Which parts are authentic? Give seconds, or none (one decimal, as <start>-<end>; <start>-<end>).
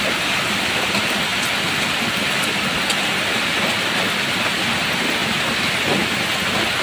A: 0.0-6.8